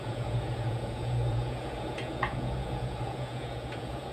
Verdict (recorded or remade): remade